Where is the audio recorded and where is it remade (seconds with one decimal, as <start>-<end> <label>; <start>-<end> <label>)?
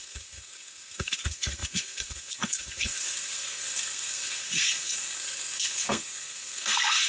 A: 0.0-7.1 remade